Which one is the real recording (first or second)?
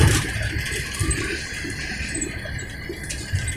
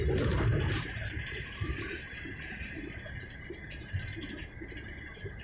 first